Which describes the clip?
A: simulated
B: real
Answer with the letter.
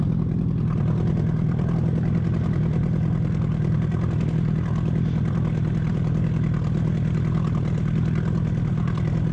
B